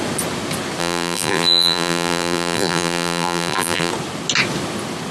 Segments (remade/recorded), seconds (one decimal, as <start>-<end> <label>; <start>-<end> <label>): 0.0-0.8 recorded; 0.8-3.9 remade; 3.9-5.1 recorded